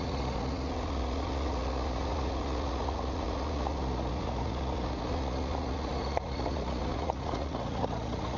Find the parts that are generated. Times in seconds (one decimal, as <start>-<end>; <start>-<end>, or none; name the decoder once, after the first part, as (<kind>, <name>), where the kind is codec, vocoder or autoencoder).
0.0-8.4 (vocoder, Vocos)